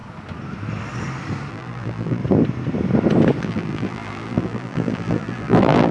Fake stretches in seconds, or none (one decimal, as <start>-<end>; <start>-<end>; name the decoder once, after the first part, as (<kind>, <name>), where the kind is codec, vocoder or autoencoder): 1.5-2.2 (vocoder, BigVGAN v2); 3.4-5.9